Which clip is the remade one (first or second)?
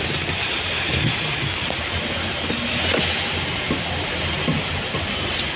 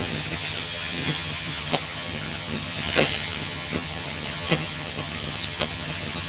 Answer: second